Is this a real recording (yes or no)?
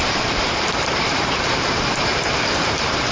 no